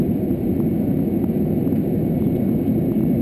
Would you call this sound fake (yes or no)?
no